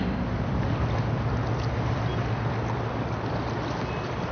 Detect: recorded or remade recorded